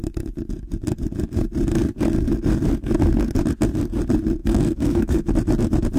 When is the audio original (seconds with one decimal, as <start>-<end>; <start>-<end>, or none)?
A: 0.0-4.4; 5.3-6.0